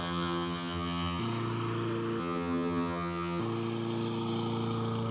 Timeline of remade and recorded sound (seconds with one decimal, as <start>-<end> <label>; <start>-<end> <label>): 0.0-1.2 remade; 1.2-2.2 recorded; 2.2-3.4 remade; 3.4-5.1 recorded